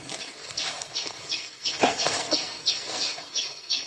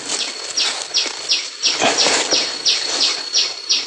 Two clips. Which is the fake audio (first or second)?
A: first